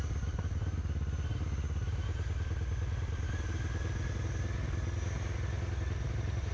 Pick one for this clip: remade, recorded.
recorded